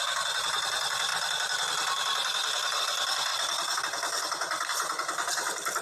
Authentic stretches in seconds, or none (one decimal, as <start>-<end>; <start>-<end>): 1.1-2.8